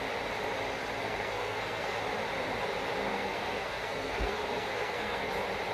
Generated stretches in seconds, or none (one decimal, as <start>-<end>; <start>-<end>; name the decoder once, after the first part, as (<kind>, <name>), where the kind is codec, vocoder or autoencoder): 1.0-2.0 (codec, SNAC); 3.1-5.3